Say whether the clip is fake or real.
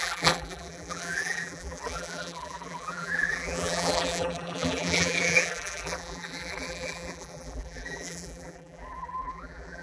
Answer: fake